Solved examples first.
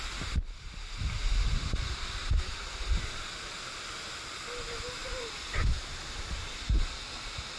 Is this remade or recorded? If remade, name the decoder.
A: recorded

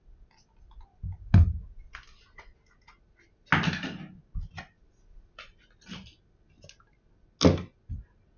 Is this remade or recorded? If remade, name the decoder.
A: recorded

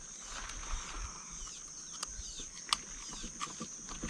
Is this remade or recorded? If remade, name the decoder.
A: recorded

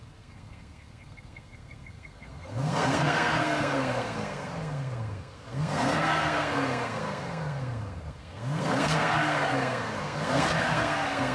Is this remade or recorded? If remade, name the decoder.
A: remade, codec, SNAC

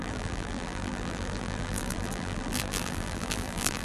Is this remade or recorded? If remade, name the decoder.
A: remade, vocoder, BigVGAN v2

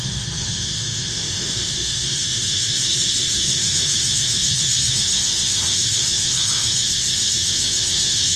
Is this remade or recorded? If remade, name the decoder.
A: remade, autoencoder, DAC-VAE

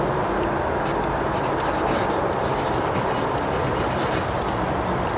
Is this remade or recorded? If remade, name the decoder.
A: recorded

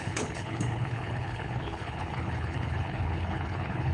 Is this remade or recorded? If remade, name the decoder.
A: remade, codec, HILCodec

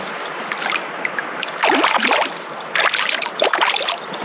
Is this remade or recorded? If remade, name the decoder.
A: recorded